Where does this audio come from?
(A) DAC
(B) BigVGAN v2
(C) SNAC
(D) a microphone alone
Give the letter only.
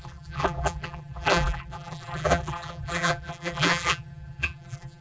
B